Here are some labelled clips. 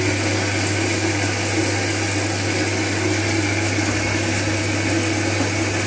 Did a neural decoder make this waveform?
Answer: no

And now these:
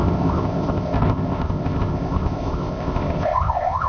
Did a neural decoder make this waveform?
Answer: yes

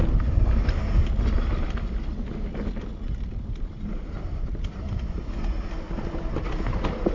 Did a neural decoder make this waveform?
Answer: no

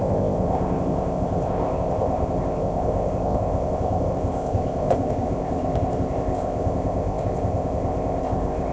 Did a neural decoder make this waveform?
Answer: yes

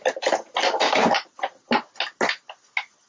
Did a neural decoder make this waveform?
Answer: no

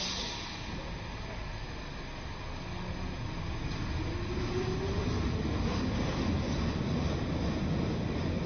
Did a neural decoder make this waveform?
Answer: no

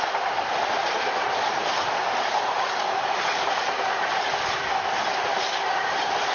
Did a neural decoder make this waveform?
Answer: no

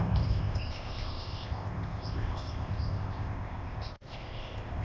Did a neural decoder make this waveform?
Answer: yes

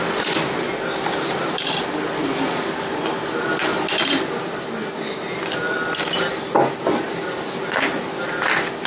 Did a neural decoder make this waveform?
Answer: no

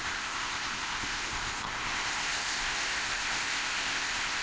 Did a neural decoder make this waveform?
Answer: yes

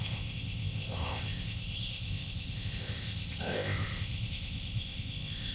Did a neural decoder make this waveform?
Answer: yes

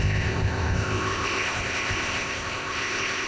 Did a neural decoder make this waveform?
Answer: yes